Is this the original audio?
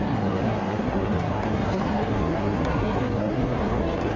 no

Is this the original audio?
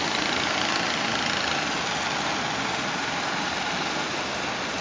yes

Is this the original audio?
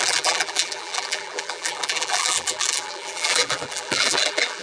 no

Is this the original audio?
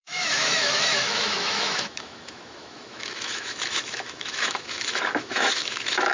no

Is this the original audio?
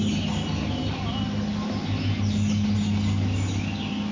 yes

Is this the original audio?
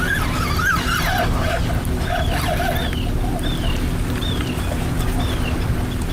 yes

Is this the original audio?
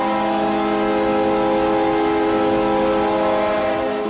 yes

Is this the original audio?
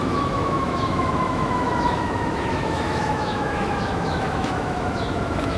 no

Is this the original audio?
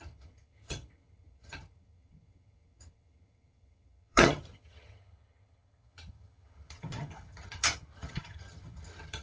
no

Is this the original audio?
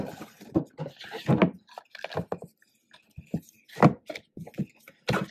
yes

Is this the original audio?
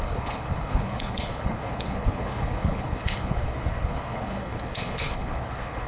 no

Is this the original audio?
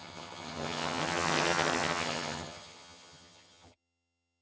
no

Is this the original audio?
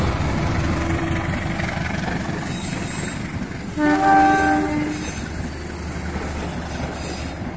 yes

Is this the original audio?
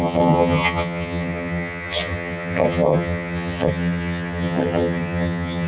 no